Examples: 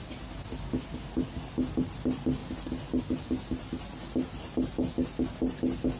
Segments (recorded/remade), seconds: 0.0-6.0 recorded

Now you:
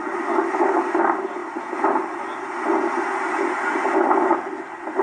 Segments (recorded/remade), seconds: 0.0-1.4 recorded; 1.4-3.6 remade; 3.6-5.0 recorded

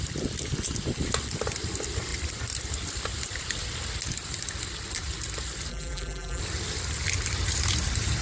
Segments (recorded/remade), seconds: 0.0-5.7 recorded; 5.7-6.4 remade; 6.4-8.2 recorded

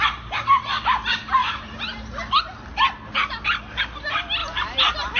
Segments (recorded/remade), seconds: 0.0-1.4 recorded; 1.4-2.4 remade; 2.4-4.4 recorded; 4.4-5.2 remade

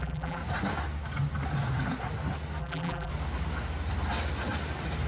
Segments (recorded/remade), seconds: 0.0-0.4 remade; 0.4-2.6 recorded; 2.6-3.1 remade; 3.1-5.1 recorded